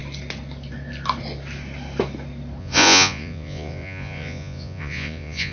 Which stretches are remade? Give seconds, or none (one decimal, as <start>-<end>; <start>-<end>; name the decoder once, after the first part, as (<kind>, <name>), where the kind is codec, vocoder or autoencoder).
2.6-5.5 (vocoder, Vocos)